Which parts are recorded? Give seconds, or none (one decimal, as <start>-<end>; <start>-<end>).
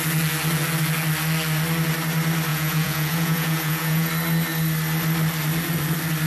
0.0-2.5; 4.1-6.3